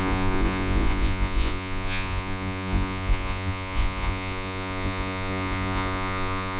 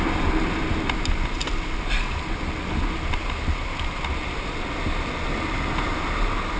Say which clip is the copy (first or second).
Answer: first